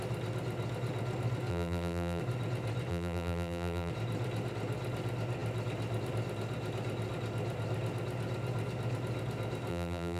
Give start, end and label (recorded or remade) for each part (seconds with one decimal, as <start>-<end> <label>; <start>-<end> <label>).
0.0-1.5 recorded; 1.5-2.2 remade; 2.2-2.9 recorded; 2.9-3.9 remade; 3.9-9.7 recorded; 9.7-10.2 remade